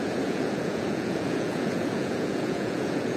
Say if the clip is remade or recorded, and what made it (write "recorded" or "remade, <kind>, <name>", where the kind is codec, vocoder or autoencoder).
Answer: remade, vocoder, Vocos